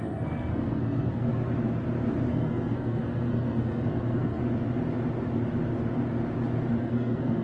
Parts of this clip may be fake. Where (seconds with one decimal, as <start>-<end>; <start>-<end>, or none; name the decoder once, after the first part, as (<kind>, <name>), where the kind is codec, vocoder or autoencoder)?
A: 0.0-1.3 (codec, SNAC); 2.3-4.4; 6.8-7.4